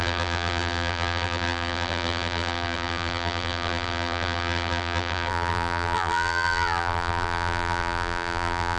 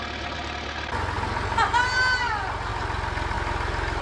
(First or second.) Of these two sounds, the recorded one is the second